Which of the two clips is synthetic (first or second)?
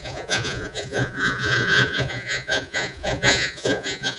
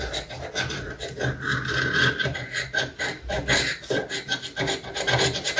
first